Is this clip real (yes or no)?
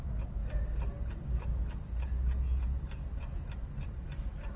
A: yes